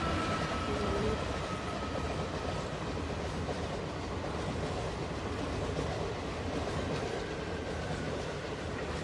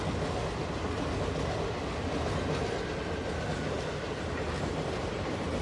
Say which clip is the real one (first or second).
second